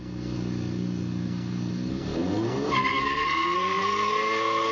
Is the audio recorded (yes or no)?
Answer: no